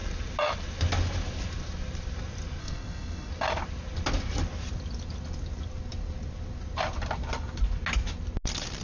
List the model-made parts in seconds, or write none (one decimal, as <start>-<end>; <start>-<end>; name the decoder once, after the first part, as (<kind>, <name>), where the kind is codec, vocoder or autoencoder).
2.6-3.3 (codec, SNAC)